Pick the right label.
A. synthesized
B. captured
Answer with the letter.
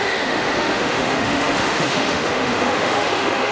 A